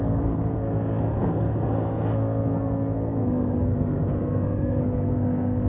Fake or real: fake